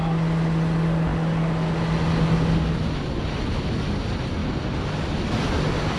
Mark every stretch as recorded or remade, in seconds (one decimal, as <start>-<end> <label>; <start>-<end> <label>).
0.0-6.0 recorded